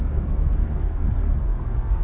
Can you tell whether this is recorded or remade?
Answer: remade